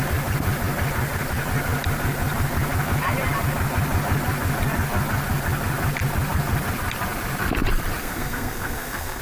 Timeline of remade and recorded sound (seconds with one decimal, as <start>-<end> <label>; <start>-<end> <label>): 0.0-8.0 recorded; 8.0-9.2 remade